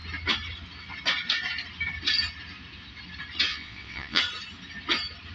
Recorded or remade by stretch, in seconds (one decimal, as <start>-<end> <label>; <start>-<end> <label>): 0.0-3.5 recorded; 3.5-4.2 remade; 4.2-5.3 recorded

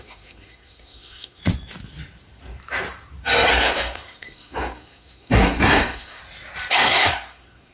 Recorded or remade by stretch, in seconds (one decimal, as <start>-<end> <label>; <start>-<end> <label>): 0.0-1.4 remade; 1.4-3.5 recorded; 3.5-6.2 remade; 6.2-6.7 recorded; 6.7-7.7 remade